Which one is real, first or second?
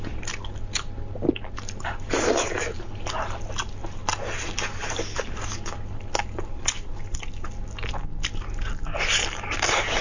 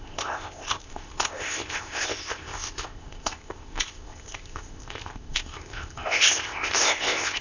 first